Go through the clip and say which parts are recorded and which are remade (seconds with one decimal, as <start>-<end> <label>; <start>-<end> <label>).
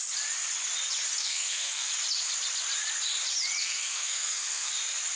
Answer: 0.0-1.2 recorded; 1.2-1.9 remade; 1.9-3.6 recorded; 3.6-4.7 remade; 4.7-5.2 recorded